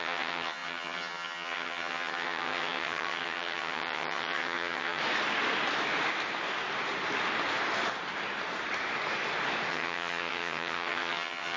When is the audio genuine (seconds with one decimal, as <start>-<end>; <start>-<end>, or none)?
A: 5.0-9.7